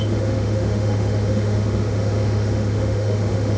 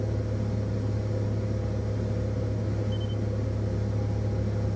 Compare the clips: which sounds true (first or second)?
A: second